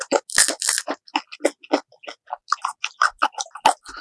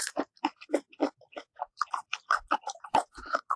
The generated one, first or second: second